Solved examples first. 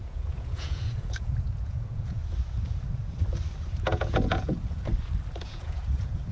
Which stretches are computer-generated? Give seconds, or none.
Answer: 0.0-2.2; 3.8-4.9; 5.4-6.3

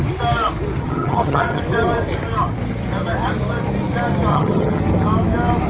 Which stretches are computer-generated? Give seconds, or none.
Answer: 0.8-1.6; 4.3-4.8